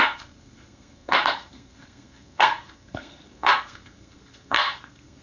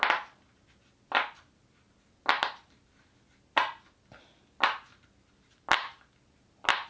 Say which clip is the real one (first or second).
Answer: second